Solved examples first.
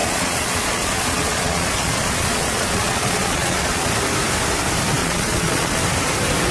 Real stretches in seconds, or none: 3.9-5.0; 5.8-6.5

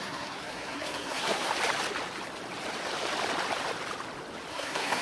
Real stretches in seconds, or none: 1.5-4.5

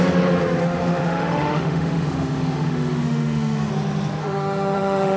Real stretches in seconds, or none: 0.0-0.6; 3.7-4.2